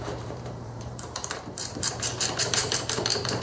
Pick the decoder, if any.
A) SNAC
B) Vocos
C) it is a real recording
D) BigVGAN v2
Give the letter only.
D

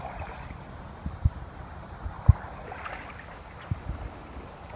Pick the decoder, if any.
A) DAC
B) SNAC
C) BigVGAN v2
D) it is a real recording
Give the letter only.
D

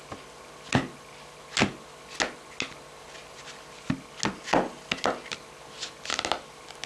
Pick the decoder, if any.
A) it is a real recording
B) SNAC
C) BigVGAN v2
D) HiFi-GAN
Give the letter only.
A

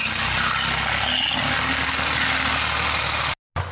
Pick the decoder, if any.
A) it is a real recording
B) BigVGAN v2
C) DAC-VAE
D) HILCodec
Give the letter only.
A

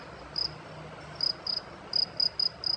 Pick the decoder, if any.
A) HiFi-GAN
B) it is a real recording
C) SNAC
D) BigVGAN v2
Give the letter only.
B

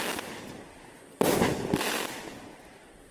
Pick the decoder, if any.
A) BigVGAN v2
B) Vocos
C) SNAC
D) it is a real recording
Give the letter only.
D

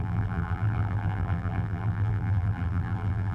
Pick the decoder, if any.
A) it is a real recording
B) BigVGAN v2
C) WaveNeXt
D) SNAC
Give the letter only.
B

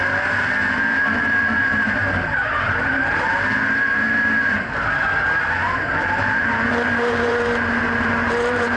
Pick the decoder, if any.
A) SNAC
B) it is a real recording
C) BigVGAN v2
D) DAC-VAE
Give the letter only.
C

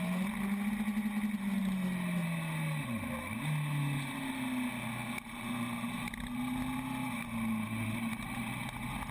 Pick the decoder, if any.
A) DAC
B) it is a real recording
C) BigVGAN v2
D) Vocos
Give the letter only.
B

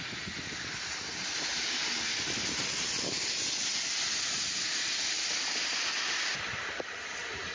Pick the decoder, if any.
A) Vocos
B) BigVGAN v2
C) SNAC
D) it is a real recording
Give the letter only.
D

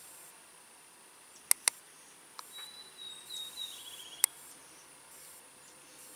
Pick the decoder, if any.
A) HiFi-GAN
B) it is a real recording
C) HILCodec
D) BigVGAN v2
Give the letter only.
B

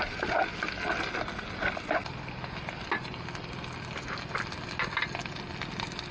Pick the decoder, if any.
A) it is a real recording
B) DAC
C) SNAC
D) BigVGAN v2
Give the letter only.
A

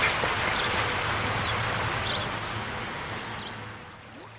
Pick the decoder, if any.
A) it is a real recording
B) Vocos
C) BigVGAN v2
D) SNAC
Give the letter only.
A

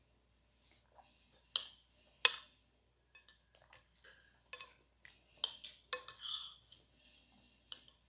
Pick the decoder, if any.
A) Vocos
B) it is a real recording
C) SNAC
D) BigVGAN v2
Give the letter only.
B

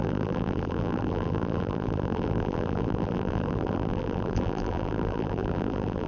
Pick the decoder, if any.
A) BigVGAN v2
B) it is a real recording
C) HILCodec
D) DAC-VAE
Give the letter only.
A